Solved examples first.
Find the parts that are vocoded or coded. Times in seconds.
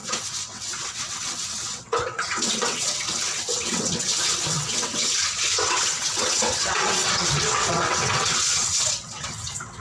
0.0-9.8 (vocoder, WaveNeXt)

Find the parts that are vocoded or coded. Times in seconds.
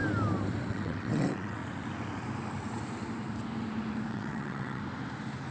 0.7-1.6 (vocoder, WaveNeXt); 4.1-4.8